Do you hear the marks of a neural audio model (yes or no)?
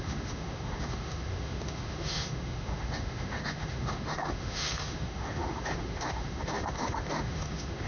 yes